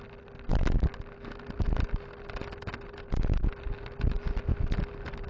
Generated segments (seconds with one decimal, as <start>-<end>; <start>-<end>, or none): none